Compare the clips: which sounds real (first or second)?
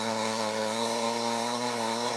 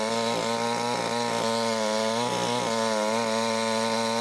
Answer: second